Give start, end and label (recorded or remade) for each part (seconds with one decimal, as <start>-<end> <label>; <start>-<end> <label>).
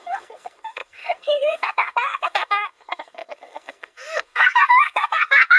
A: 0.0-5.6 remade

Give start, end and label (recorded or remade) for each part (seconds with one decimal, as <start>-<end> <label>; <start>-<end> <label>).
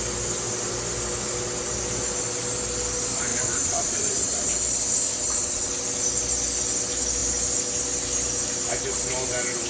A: 0.0-3.3 recorded; 3.3-4.5 remade; 4.5-5.1 recorded; 5.1-5.7 remade; 5.7-9.7 recorded